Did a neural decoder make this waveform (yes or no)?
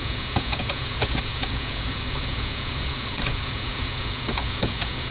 yes